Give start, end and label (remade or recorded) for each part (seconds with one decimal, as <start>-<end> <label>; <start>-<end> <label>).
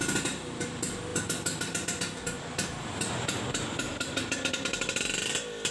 0.0-5.7 recorded